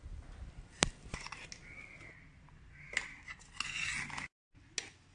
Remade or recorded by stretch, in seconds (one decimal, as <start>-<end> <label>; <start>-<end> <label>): 0.0-1.6 recorded; 1.6-2.2 remade; 2.2-5.1 recorded